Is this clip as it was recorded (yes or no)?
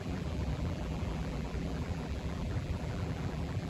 no